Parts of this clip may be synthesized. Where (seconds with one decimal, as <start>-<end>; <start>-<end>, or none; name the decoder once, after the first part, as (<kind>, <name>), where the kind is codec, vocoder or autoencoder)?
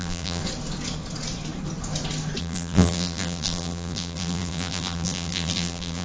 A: 0.0-0.4 (vocoder, BigVGAN v2); 2.4-6.0